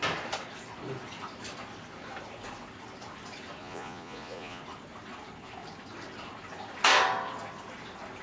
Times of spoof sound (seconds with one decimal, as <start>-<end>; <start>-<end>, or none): 3.6-4.6